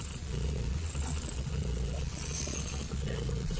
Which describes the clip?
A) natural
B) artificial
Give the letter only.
B